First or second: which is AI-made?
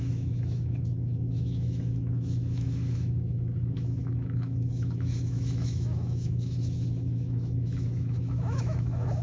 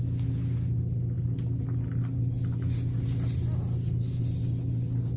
first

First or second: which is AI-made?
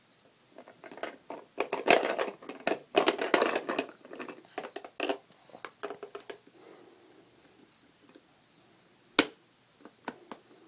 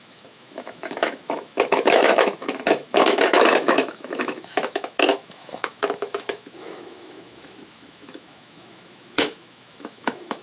second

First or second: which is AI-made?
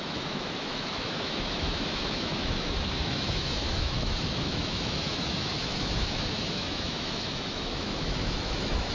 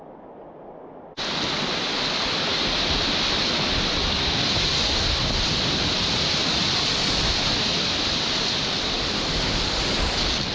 first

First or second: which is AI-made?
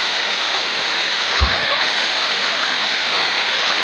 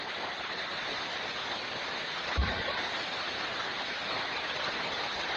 first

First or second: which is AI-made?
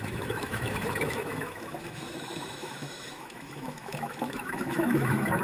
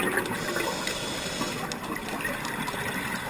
first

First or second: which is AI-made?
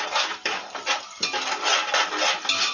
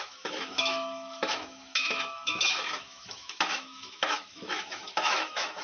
second